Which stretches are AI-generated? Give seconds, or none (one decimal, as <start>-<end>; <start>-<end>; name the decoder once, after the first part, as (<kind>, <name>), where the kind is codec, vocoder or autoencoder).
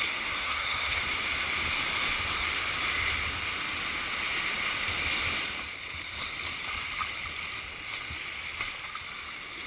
0.4-1.0 (codec, SNAC)